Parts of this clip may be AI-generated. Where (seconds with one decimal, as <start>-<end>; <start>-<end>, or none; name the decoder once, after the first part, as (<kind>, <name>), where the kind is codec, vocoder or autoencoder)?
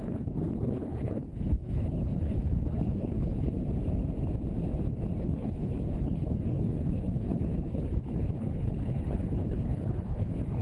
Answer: 0.0-3.6 (codec, HILCodec); 5.2-10.6